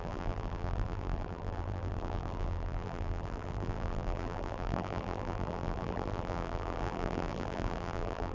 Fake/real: fake